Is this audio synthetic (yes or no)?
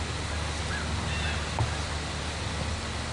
no